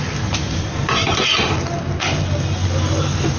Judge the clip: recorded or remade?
recorded